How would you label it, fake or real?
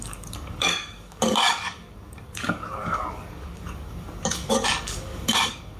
fake